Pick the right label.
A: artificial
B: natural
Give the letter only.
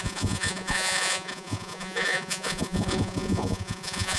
A